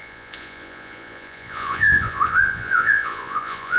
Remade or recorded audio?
remade